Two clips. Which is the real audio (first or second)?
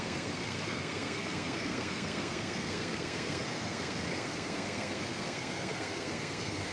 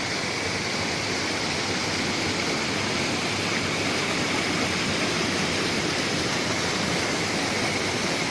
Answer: second